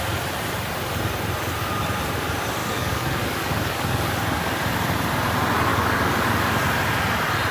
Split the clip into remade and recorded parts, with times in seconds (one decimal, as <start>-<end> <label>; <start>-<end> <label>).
0.0-2.6 recorded; 2.6-4.5 remade; 4.5-5.7 recorded; 5.7-6.5 remade; 6.5-7.5 recorded